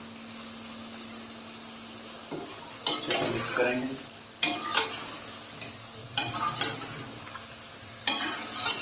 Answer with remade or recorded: recorded